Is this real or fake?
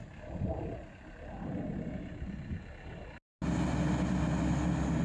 real